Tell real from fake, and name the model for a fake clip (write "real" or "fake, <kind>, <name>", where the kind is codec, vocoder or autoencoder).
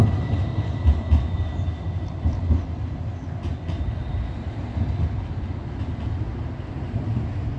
real